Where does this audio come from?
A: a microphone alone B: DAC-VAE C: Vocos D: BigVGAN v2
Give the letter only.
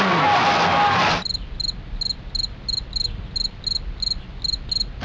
A